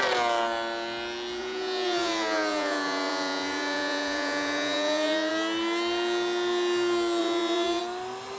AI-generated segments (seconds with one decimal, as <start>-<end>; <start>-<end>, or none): 1.4-5.3; 7.2-7.8